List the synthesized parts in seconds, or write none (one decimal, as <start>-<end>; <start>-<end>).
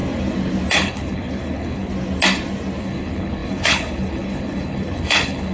0.7-1.9; 2.8-5.5